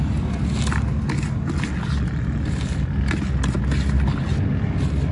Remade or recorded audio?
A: recorded